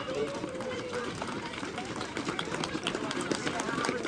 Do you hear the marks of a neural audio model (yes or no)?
yes